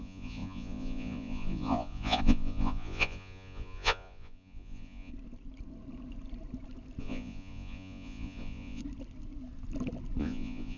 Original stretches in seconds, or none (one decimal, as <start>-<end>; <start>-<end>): 5.1-7.0; 8.8-10.2